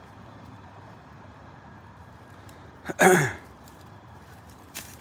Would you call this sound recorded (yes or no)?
no